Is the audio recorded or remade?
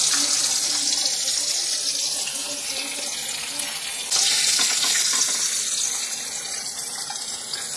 recorded